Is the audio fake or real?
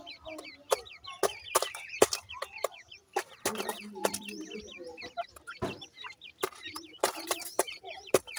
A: real